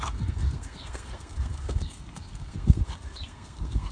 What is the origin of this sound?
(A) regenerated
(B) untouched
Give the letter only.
A